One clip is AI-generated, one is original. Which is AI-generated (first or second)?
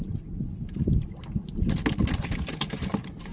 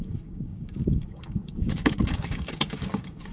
second